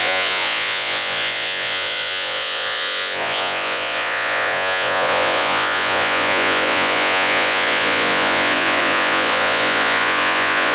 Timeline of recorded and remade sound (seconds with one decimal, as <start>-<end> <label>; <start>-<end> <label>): 0.0-10.7 remade